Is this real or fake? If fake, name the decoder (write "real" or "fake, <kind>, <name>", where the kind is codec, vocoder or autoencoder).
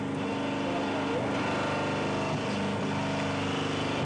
real